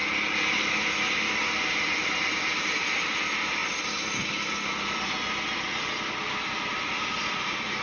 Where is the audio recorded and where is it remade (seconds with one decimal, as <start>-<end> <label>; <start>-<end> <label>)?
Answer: 0.0-7.8 recorded